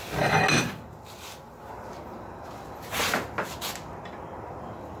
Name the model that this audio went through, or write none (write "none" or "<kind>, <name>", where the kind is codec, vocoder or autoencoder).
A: none